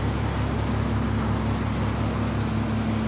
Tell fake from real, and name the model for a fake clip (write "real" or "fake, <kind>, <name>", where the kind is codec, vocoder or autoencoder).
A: real